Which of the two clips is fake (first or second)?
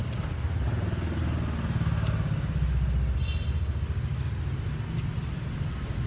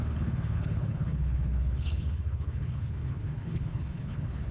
second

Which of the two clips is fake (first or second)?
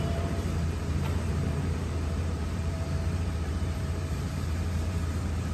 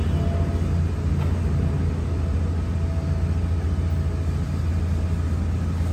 first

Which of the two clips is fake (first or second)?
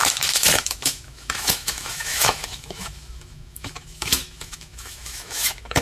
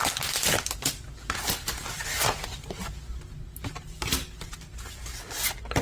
first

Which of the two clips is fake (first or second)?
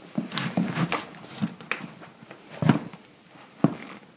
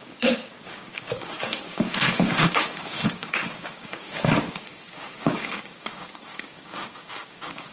second